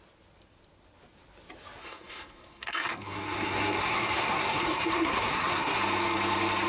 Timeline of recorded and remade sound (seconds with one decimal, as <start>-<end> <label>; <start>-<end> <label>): 0.0-1.8 recorded; 1.8-5.8 remade; 5.8-6.7 recorded